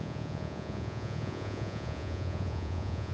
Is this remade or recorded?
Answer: remade